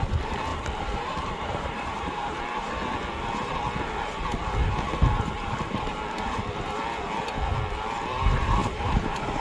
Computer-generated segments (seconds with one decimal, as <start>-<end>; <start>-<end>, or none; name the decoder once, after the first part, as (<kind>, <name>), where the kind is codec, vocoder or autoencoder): 0.5-2.4 (vocoder, BigVGAN v2); 8.6-9.4